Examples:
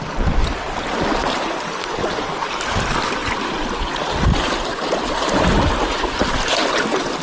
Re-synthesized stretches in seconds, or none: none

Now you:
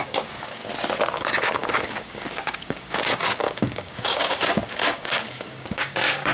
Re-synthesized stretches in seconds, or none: 0.0-0.6 (codec, DAC); 1.1-6.3

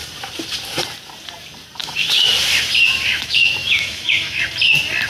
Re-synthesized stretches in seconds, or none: 1.8-2.3 (autoencoder, DAC-VAE); 3.1-4.4

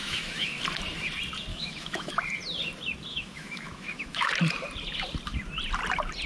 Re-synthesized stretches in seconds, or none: 0.0-0.6 (autoencoder, DAC-VAE); 1.5-2.1; 3.1-4.3

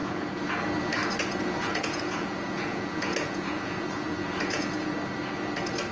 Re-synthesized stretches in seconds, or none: 0.0-0.5 (vocoder, Vocos); 1.4-4.9